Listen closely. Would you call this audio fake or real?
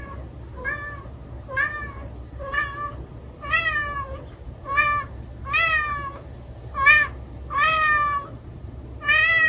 real